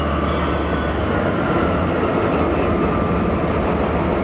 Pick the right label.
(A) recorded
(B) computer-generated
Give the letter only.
A